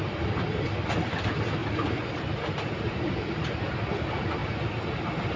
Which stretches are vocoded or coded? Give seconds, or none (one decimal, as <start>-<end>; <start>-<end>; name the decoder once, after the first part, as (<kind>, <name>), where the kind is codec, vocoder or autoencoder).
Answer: 0.0-1.6 (vocoder, BigVGAN v2); 2.1-5.4